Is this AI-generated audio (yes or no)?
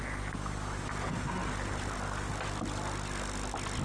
no